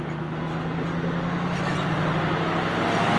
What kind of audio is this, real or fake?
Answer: real